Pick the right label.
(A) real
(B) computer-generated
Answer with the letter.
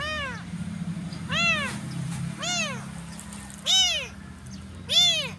A